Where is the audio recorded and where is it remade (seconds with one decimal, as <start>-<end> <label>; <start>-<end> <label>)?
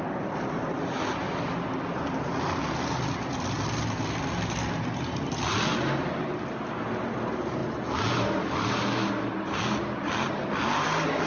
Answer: 0.0-11.3 recorded